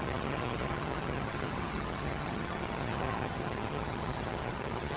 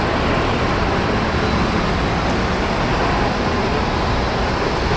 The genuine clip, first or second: second